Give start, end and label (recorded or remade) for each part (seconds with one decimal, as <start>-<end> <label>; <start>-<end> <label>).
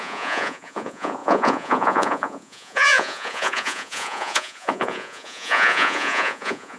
0.0-6.8 remade